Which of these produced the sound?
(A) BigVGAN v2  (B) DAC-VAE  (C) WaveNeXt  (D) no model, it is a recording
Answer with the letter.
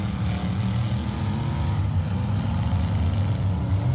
D